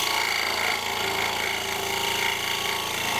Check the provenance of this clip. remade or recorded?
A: remade